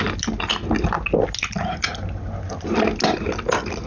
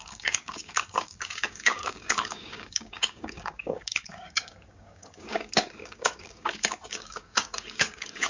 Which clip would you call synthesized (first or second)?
second